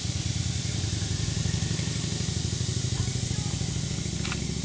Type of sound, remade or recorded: recorded